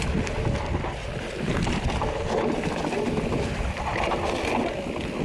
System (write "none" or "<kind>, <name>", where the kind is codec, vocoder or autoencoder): none